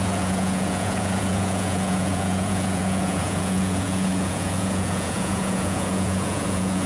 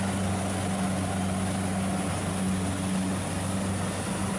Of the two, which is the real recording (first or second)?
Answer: second